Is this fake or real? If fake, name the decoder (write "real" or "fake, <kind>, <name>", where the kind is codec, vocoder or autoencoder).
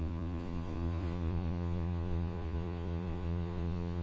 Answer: fake, vocoder, Vocos